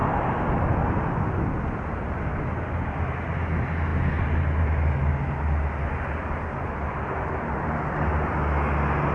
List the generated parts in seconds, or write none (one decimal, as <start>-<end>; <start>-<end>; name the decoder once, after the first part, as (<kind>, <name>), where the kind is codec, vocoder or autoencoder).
none